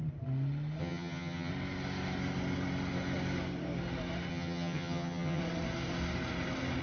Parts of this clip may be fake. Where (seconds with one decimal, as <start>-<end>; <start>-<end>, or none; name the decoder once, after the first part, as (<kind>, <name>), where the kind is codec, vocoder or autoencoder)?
0.8-1.5 (vocoder, HiFi-GAN); 4.3-5.4